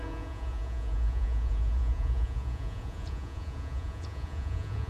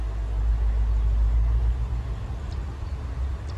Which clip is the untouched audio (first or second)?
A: second